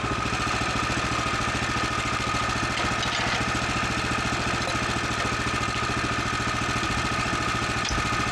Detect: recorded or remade recorded